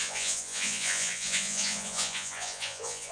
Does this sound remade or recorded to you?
remade